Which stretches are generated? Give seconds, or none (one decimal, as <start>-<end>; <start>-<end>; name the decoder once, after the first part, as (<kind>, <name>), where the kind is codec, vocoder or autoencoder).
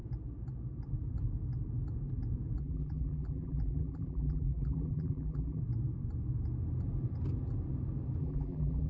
2.6-5.6 (vocoder, BigVGAN v2); 8.2-8.9